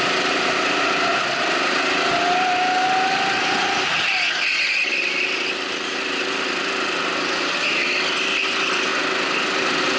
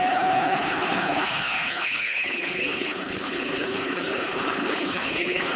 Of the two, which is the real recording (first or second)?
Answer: first